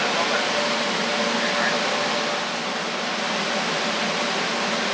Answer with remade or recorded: recorded